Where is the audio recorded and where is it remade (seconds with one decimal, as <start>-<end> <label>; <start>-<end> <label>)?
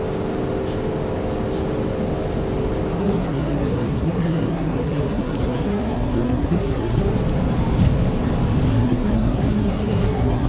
0.0-3.0 recorded; 3.0-7.1 remade; 7.1-8.7 recorded; 8.7-10.5 remade